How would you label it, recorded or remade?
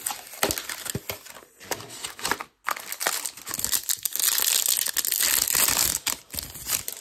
recorded